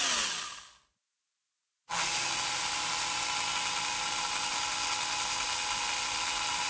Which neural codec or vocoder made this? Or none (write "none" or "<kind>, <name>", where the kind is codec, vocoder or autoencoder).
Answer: none